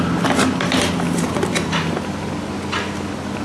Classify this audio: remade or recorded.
recorded